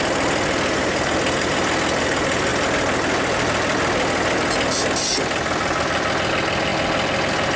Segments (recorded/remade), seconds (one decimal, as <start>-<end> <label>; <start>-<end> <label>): 0.0-7.6 recorded